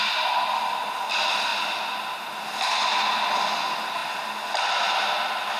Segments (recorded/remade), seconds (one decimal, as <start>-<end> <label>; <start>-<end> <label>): 0.0-5.6 recorded